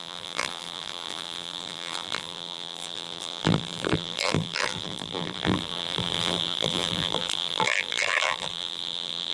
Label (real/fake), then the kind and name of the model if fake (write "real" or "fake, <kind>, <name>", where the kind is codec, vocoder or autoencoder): fake, vocoder, BigVGAN v2